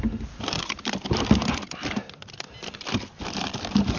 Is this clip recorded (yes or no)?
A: no